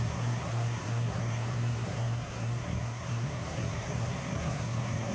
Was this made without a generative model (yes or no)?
no